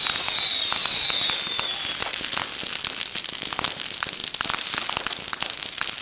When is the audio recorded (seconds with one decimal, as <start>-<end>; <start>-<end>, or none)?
0.0-6.0